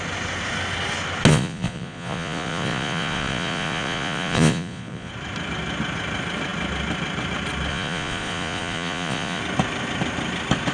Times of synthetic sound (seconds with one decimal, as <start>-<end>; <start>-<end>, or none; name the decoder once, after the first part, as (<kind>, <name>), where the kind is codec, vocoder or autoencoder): 1.3-5.1 (vocoder, Vocos); 7.7-9.4